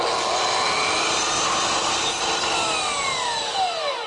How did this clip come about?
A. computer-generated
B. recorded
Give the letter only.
B